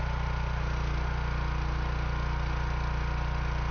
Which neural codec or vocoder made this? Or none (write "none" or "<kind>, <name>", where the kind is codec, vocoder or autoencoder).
none